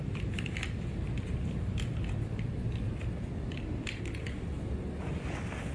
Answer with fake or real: real